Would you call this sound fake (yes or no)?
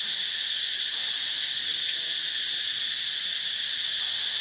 yes